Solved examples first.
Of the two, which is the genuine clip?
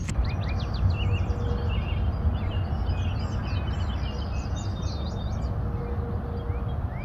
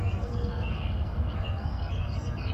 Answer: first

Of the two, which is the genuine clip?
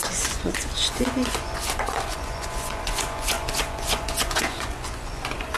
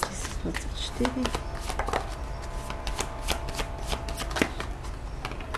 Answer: second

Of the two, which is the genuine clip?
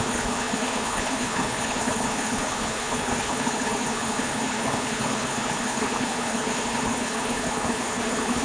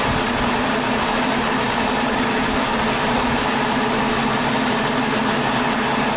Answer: second